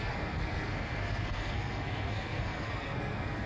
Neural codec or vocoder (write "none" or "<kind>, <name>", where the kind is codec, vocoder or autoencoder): codec, SNAC